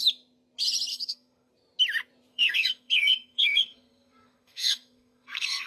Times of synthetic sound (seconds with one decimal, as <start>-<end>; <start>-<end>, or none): 0.9-1.5; 2.3-5.7